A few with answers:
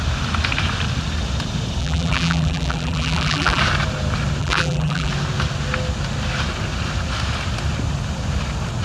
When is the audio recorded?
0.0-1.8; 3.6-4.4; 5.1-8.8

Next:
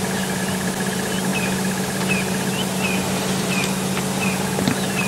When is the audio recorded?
0.0-5.1

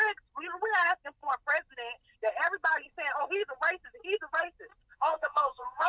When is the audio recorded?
0.0-4.9